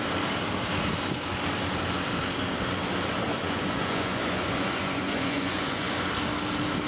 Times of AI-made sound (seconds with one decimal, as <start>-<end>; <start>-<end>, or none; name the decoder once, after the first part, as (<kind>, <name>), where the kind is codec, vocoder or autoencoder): 3.4-6.1 (vocoder, Vocos)